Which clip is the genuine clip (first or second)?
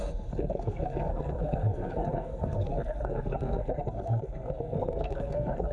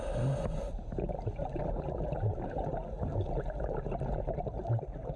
second